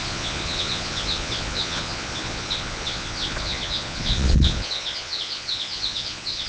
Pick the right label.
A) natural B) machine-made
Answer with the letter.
B